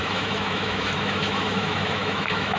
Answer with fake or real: fake